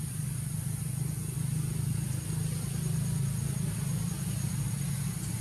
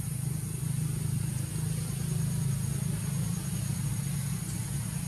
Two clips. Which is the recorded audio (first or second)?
second